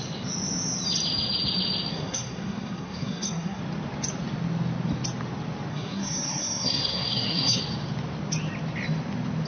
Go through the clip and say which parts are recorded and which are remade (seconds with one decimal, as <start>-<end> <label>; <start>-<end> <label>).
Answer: 0.0-1.9 recorded; 1.9-3.6 remade; 3.6-5.7 recorded; 5.7-7.6 remade; 7.6-9.5 recorded